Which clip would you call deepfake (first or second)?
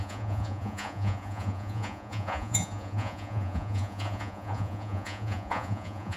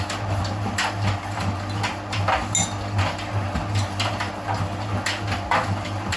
first